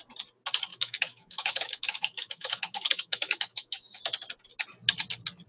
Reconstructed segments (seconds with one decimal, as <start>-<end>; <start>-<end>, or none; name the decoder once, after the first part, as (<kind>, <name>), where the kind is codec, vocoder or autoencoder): 0.7-4.0 (autoencoder, DAC-VAE)